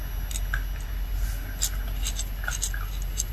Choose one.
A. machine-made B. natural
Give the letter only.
B